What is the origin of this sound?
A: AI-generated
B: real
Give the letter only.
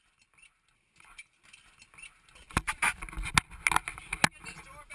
B